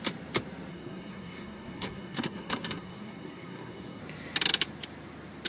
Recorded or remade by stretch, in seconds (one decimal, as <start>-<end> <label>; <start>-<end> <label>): 0.0-0.7 recorded; 0.7-4.0 remade; 4.0-5.5 recorded